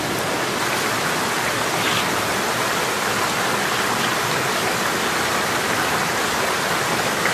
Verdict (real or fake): real